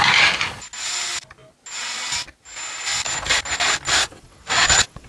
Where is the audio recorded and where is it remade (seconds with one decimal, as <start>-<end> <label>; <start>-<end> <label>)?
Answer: 0.0-4.0 recorded; 4.0-5.1 remade